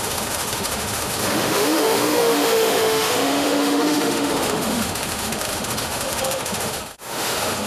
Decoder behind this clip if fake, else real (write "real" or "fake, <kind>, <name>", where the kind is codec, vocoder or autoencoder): fake, autoencoder, DAC-VAE